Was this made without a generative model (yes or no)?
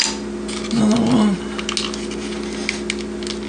yes